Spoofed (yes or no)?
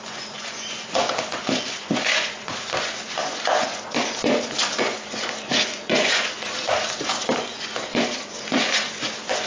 yes